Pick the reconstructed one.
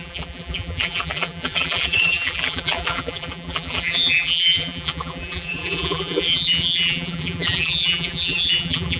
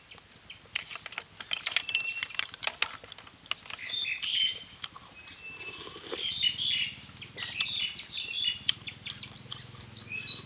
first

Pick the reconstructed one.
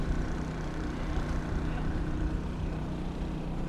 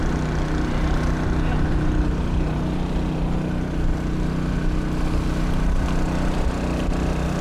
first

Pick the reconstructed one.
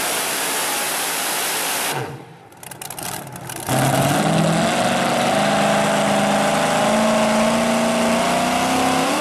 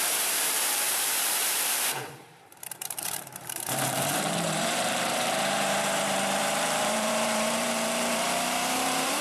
second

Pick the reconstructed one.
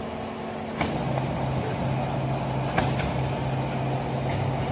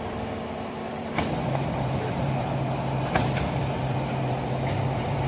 second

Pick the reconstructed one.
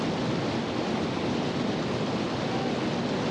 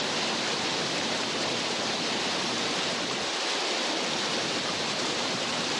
second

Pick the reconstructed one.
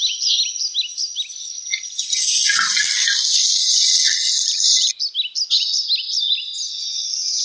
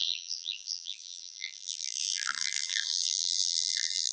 second